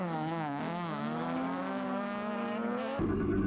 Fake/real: fake